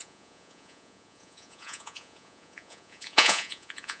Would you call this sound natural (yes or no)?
no